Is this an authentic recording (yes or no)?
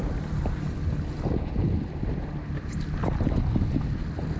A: yes